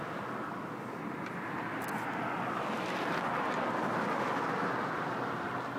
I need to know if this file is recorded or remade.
recorded